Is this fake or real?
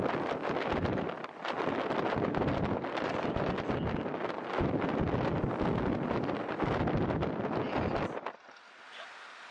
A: real